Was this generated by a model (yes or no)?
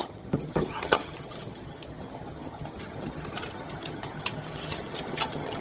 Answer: yes